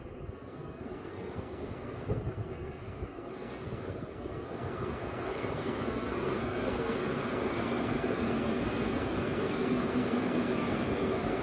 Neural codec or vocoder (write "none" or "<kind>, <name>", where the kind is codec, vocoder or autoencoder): codec, SNAC